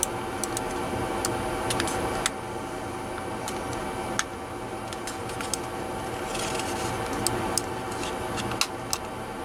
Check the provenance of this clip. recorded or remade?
recorded